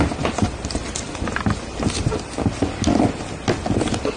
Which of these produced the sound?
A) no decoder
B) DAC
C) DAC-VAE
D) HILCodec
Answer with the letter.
A